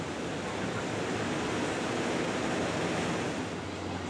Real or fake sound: real